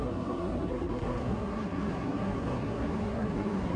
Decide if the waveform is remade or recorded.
remade